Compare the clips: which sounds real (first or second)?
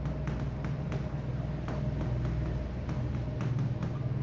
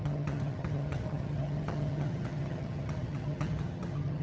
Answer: first